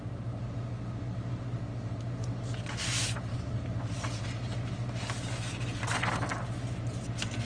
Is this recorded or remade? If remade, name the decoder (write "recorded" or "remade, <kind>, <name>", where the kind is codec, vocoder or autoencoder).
recorded